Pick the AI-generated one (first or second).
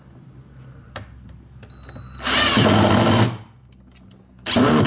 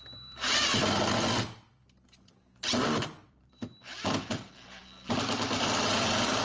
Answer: second